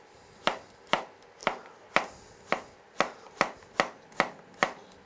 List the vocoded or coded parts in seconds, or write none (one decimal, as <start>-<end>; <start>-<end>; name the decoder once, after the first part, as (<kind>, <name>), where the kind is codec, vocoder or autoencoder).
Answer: none